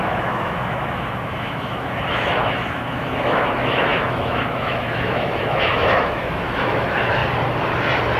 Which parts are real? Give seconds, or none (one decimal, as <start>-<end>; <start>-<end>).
7.2-8.2